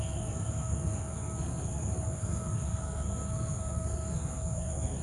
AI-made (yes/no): yes